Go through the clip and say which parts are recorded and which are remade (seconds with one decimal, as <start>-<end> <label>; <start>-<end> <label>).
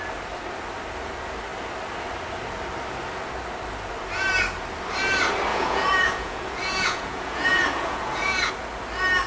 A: 0.0-5.5 recorded; 5.5-8.5 remade; 8.5-9.3 recorded